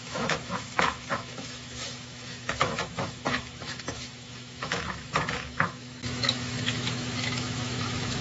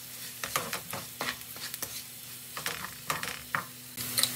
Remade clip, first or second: first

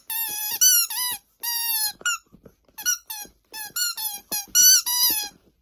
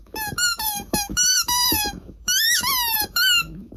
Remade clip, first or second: second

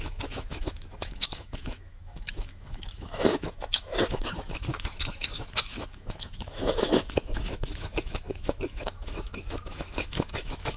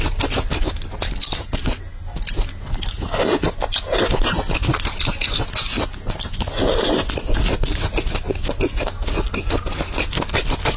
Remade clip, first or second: first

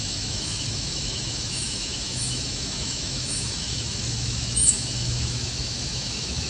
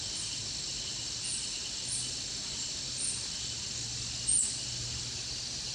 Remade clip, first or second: first